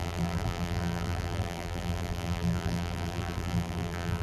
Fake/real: fake